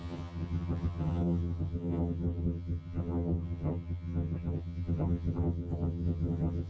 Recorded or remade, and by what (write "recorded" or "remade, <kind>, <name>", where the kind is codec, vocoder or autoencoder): remade, vocoder, HiFi-GAN